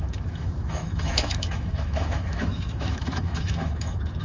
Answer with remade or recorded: remade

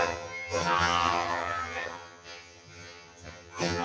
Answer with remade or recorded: remade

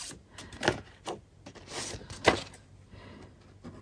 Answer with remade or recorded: recorded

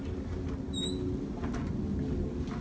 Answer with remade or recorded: recorded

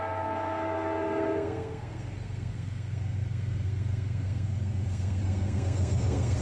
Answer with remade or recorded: remade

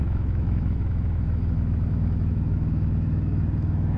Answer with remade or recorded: remade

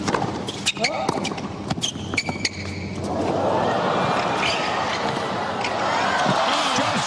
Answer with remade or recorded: recorded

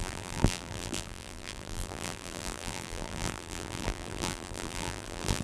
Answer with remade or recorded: remade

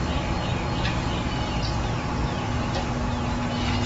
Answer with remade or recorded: recorded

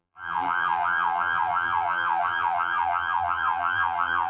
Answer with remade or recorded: remade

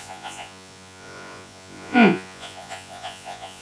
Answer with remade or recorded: remade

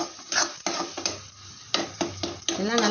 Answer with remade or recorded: recorded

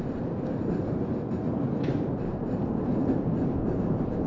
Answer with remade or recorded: recorded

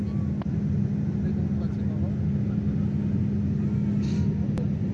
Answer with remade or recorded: recorded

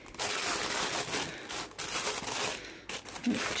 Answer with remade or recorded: recorded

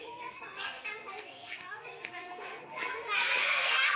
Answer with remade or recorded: remade